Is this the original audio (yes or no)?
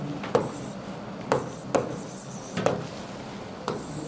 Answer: yes